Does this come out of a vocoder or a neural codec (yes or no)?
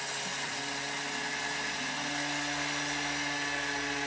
no